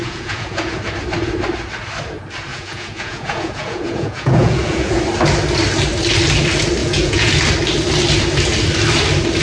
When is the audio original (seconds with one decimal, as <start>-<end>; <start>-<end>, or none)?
0.8-2.5; 5.0-6.8; 7.3-9.4